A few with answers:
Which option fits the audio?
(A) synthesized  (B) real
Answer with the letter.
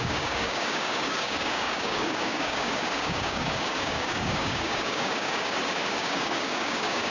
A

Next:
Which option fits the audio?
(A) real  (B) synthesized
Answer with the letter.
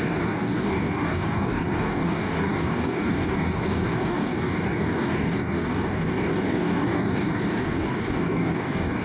B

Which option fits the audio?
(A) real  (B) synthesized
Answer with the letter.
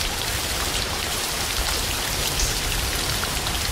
A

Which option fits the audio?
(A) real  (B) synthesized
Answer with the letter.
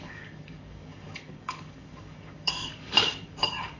B